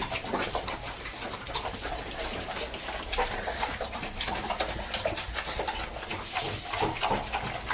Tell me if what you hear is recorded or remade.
recorded